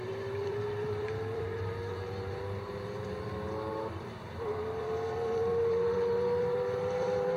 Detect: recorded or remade remade